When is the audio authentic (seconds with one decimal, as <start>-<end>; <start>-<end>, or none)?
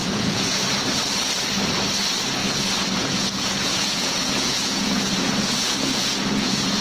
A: 0.6-2.4